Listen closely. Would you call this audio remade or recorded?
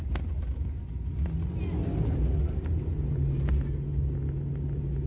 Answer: recorded